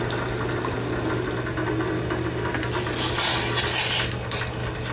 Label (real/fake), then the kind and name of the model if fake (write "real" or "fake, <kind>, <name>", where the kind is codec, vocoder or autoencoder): real